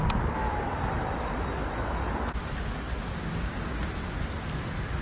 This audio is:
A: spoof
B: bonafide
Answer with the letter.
B